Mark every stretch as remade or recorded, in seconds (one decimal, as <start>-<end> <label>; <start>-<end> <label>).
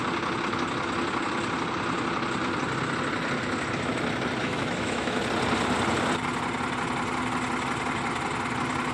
0.0-4.4 recorded; 4.4-5.2 remade; 5.2-8.9 recorded